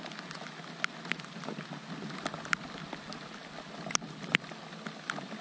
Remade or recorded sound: recorded